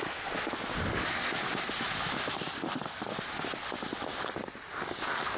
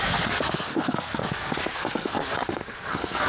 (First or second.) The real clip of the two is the first